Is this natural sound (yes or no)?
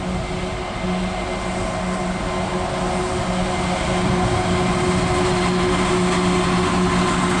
yes